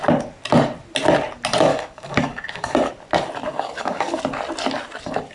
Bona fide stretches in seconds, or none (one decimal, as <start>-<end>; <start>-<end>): 0.0-1.7; 2.9-3.5; 4.2-5.3